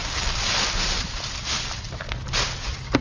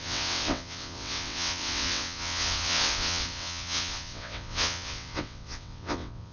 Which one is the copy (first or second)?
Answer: second